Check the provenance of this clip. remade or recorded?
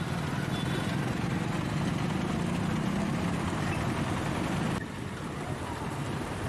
recorded